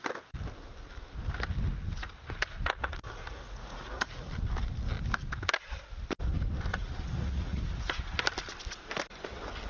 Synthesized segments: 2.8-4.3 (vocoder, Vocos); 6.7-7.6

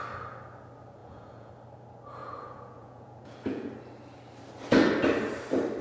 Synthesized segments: 1.0-1.5 (vocoder, Vocos); 2.2-3.7